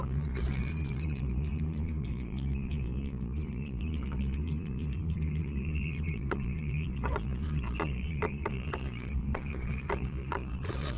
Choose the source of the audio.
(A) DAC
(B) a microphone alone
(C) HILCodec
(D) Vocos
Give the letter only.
D